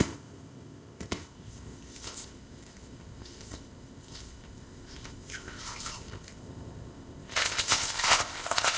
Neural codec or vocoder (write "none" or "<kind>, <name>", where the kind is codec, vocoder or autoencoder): codec, ZipCodec